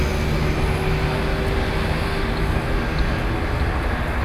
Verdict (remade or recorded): recorded